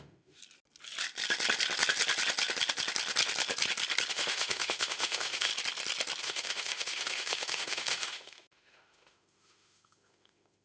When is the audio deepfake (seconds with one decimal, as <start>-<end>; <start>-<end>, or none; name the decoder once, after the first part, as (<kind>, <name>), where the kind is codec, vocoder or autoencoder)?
0.0-0.4 (autoencoder, DAC-VAE); 4.1-5.5; 6.2-10.6